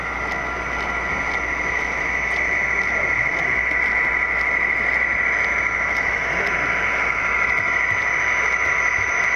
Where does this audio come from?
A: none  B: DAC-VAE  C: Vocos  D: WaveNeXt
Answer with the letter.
A